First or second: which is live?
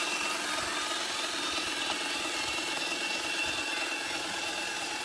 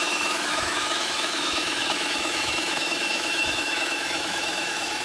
first